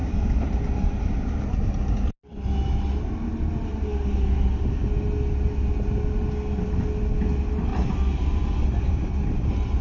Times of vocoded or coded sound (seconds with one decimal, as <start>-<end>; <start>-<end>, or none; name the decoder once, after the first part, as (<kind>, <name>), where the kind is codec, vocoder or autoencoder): 0.0-1.1 (vocoder, BigVGAN v2); 7.7-9.8